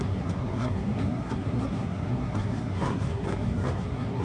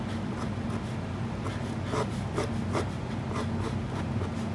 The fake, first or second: first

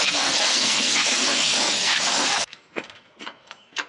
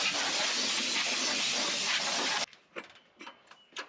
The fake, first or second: first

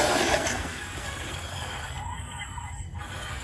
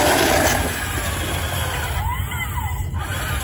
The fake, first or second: first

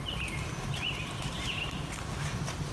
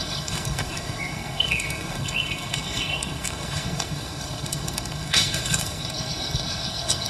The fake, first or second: second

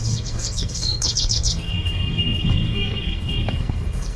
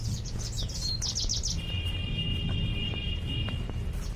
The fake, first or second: first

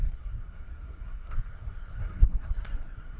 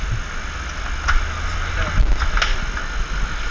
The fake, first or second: first